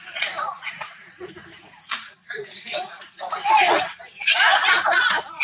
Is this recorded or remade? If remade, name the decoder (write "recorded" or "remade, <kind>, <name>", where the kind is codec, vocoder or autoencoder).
remade, vocoder, Vocos